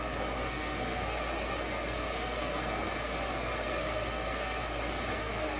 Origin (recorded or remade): remade